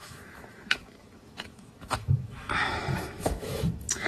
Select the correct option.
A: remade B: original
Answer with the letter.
A